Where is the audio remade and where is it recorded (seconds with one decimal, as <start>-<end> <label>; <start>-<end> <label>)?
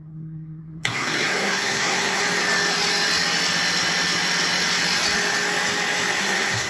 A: 0.0-2.2 remade; 2.2-6.2 recorded; 6.2-6.7 remade